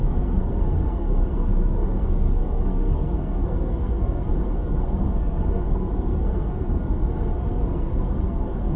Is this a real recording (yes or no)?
no